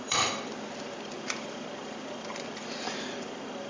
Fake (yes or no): yes